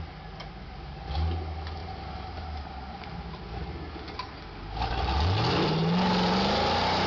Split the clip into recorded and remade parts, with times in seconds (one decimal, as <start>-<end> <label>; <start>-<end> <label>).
0.0-7.1 recorded